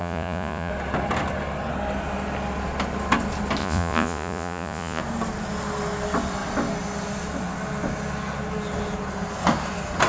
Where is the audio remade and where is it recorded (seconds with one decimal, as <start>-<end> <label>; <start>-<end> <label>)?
0.0-0.7 remade; 0.7-3.6 recorded; 3.6-5.0 remade; 5.0-10.1 recorded